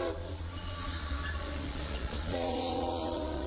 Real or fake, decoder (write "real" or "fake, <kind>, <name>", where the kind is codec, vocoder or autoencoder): fake, vocoder, Vocos